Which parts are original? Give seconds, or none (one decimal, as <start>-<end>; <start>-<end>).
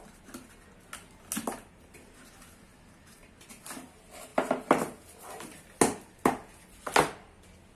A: 0.0-7.8